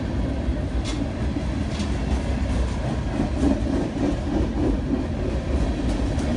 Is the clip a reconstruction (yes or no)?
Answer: no